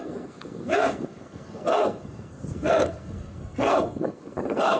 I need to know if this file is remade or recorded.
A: remade